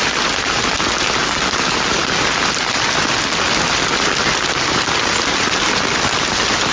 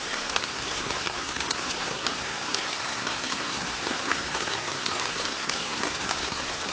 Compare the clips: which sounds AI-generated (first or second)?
second